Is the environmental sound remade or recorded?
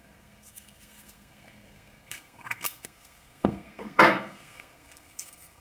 remade